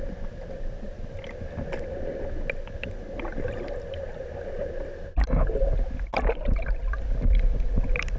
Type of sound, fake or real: real